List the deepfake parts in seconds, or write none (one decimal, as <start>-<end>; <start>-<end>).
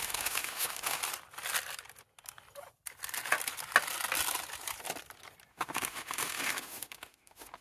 0.0-1.0; 5.5-7.6